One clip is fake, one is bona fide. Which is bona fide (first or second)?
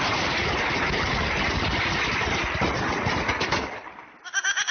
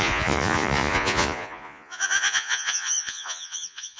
first